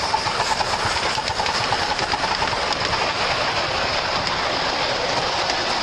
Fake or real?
fake